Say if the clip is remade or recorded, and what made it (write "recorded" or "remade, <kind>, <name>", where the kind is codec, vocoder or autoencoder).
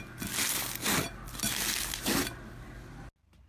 recorded